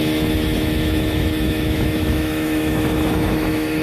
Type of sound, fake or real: fake